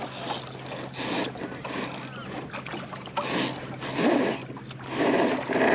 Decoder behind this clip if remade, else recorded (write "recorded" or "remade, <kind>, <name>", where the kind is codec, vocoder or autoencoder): recorded